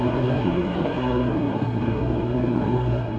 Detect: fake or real fake